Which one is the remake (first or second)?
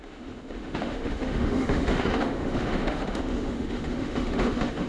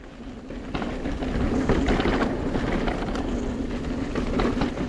first